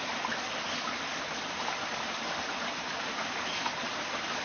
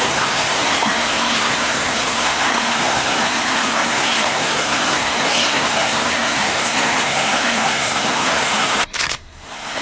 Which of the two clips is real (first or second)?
first